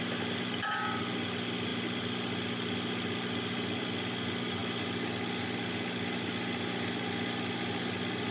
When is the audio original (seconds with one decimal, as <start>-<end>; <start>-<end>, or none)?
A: 0.0-8.3